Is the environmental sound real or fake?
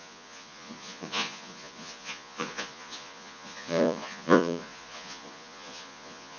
fake